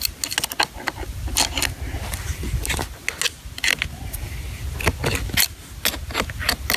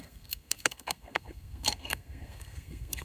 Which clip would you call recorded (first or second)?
first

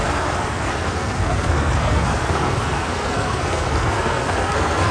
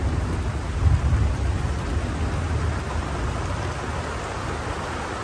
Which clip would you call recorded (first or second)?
second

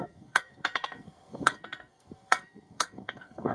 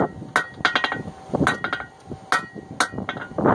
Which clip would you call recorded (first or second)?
second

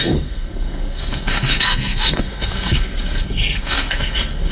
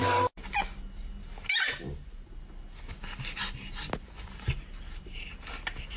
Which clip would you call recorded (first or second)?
second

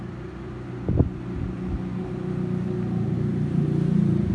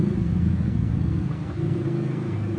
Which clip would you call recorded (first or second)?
first